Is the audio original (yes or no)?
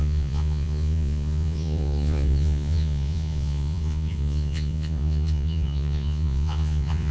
no